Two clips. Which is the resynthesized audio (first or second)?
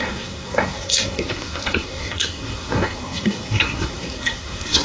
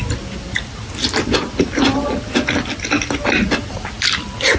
first